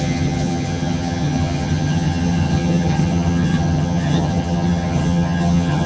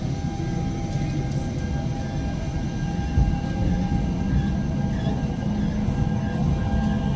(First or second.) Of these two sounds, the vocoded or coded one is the first